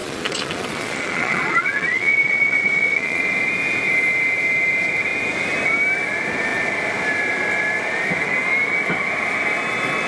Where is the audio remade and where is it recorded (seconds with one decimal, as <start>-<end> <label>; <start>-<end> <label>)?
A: 0.0-3.2 remade; 3.2-10.1 recorded